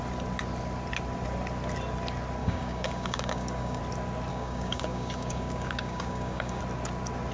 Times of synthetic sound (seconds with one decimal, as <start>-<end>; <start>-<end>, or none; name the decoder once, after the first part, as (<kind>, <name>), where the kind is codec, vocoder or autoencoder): 2.4-3.8 (codec, DAC); 4.3-6.6